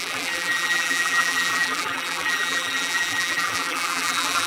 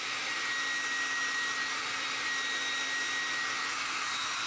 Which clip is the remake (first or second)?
first